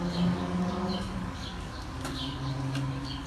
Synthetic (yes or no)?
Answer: yes